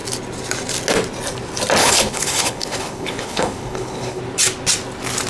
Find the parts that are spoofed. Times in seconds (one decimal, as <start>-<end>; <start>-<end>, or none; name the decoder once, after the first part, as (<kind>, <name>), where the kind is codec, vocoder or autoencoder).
1.8-4.2 (codec, HILCodec)